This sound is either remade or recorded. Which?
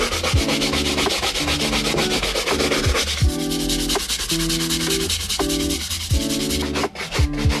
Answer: recorded